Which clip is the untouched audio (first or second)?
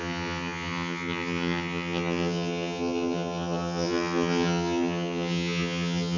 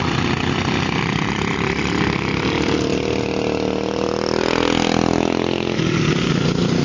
second